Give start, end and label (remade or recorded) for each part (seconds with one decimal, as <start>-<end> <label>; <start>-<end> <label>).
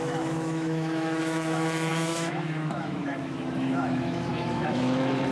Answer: 0.0-5.3 remade